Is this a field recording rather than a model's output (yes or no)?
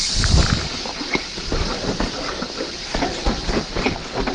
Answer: no